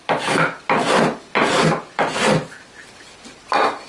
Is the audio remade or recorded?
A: recorded